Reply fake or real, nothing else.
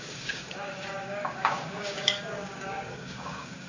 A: fake